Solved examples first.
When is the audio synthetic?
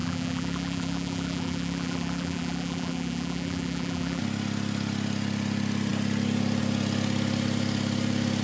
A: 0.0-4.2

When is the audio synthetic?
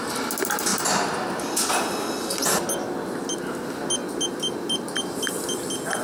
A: none